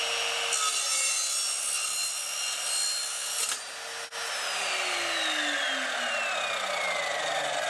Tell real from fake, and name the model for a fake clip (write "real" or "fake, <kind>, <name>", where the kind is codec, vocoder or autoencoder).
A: real